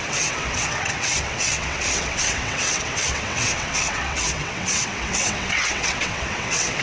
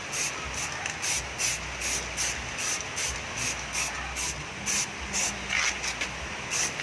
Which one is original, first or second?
second